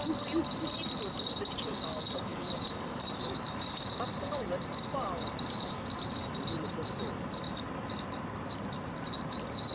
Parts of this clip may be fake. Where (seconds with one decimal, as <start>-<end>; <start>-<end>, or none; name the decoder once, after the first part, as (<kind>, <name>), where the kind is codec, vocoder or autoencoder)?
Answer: 2.3-5.7 (vocoder, BigVGAN v2); 6.2-7.6